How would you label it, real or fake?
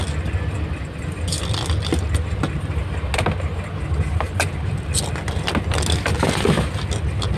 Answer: real